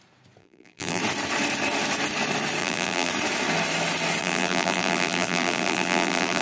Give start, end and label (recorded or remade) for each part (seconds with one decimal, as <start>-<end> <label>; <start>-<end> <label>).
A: 0.0-0.4 recorded; 0.4-1.0 remade; 1.0-2.6 recorded; 2.6-3.1 remade; 3.1-4.2 recorded; 4.2-6.4 remade

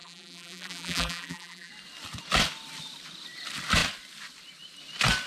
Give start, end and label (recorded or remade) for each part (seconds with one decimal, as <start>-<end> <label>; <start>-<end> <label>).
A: 0.0-1.7 remade; 1.7-5.3 recorded

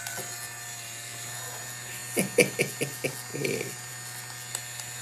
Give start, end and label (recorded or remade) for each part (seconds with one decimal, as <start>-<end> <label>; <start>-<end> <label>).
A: 0.0-5.0 recorded

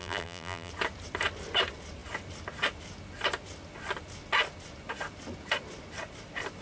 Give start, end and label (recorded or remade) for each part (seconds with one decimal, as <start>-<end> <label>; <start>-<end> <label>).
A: 0.0-0.7 remade; 0.7-6.6 recorded

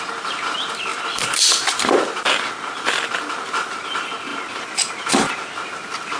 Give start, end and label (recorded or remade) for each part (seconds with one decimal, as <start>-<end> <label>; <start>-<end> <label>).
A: 0.0-6.2 recorded

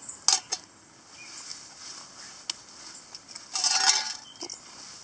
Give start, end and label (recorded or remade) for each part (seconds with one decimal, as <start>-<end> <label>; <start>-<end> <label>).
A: 0.0-5.0 recorded

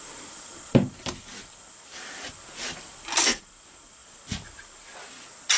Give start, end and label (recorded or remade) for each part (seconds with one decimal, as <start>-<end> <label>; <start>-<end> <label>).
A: 0.0-1.3 recorded; 1.3-2.9 remade; 2.9-5.6 recorded